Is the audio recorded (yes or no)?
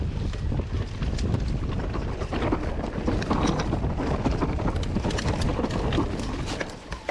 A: yes